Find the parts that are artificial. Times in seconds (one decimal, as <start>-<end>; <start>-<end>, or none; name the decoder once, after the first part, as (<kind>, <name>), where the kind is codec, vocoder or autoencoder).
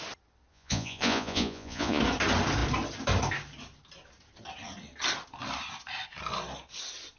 0.5-2.0 (vocoder, Vocos)